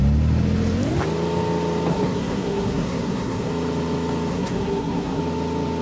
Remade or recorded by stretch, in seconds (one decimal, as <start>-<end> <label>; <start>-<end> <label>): 0.0-1.9 recorded; 1.9-3.5 remade; 3.5-4.3 recorded; 4.3-5.2 remade; 5.2-5.8 recorded